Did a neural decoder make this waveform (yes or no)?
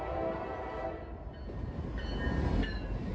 no